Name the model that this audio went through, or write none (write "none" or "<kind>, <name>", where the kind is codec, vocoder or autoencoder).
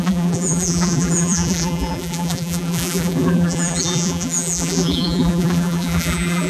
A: vocoder, BigVGAN v2